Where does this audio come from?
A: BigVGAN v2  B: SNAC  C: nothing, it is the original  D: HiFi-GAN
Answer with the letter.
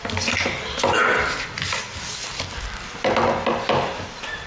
C